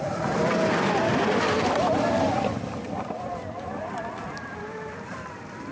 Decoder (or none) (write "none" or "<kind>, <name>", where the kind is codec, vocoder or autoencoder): vocoder, BigVGAN v2